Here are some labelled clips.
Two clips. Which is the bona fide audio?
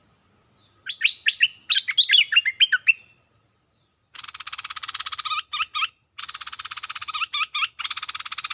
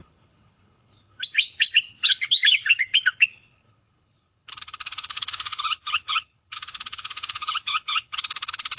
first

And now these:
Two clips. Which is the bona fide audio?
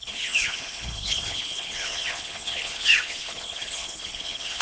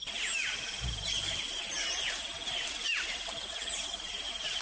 second